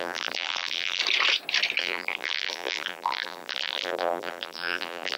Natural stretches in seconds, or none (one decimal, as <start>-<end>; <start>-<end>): 1.0-1.8

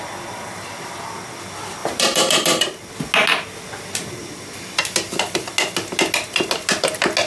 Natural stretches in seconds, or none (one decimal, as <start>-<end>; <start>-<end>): 0.0-1.8; 2.9-7.3

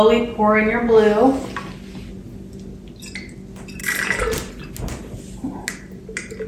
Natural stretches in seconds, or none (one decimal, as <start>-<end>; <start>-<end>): 0.0-6.5

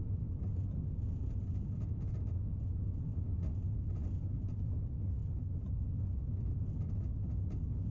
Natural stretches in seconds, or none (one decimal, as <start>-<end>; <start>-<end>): 0.0-7.9

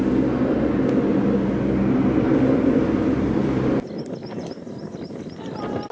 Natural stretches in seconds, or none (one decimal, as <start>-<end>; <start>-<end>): 0.0-2.3

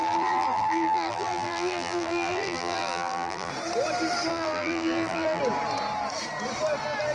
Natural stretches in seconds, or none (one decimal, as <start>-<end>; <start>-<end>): 3.5-4.3; 5.4-7.1